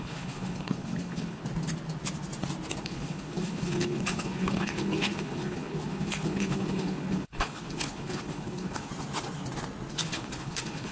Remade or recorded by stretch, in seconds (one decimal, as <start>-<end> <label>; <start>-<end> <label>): 0.0-1.4 remade; 1.4-2.8 recorded; 2.8-8.9 remade; 8.9-9.9 recorded; 9.9-10.9 remade